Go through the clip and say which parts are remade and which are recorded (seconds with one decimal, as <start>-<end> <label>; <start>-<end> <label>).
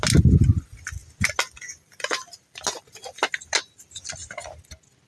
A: 0.0-5.1 recorded